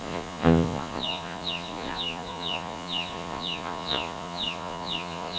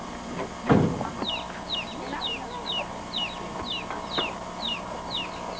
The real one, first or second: second